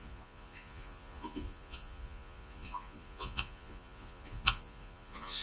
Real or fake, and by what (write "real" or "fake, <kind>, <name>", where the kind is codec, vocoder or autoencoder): fake, vocoder, Vocos